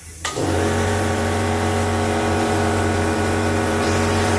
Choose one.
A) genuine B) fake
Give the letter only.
B